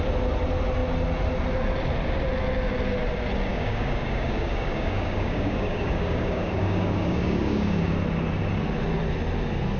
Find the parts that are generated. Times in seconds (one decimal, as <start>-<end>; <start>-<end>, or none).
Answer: 3.5-7.9